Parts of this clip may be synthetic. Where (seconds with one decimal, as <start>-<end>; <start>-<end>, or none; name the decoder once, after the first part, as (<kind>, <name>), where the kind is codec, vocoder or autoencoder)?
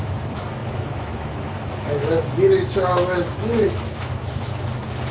0.0-4.5 (autoencoder, DAC-VAE)